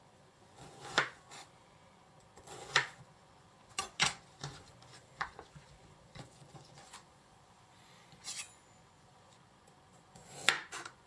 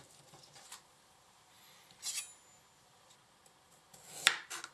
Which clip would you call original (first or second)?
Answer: second